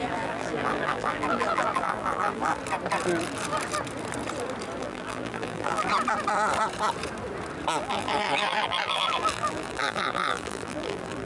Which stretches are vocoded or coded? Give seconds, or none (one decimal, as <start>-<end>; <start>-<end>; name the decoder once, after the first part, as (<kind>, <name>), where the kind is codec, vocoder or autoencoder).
0.0-2.6 (vocoder, BigVGAN v2); 4.8-5.9; 7.8-11.3